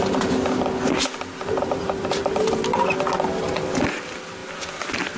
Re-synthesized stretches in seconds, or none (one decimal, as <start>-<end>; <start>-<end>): 1.3-2.4